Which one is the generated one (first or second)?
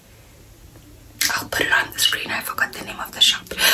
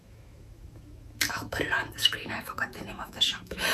second